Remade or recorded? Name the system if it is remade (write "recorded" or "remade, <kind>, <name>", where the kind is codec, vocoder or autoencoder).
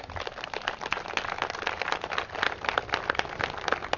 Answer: recorded